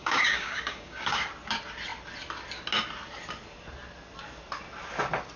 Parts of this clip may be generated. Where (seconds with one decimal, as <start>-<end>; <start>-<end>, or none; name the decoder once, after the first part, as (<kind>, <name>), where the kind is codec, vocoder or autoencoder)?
0.0-1.3 (codec, DAC)